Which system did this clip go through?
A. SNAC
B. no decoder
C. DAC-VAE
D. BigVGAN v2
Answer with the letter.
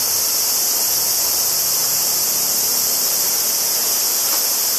B